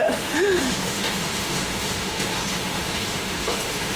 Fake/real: fake